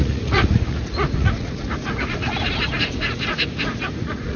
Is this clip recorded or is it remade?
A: remade